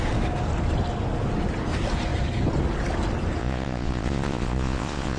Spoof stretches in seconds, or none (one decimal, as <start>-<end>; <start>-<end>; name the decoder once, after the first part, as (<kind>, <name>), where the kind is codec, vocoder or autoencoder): 3.4-5.2 (vocoder, Vocos)